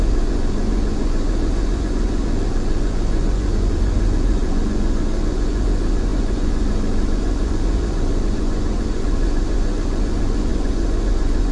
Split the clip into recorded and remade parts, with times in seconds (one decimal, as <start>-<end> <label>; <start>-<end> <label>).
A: 0.0-11.5 remade